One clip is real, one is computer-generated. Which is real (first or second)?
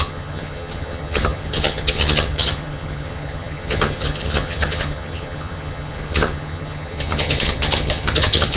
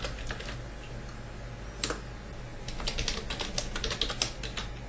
second